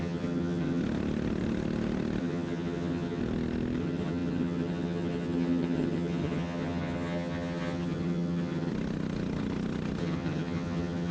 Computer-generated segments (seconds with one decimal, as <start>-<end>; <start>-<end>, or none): 0.0-0.8; 2.2-3.2; 3.8-8.7; 10.0-11.1